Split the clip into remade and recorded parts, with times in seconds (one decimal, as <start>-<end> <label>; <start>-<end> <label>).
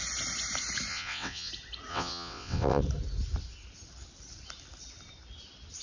0.0-0.9 recorded; 0.9-1.5 remade; 1.5-1.9 recorded; 1.9-2.8 remade; 2.8-5.8 recorded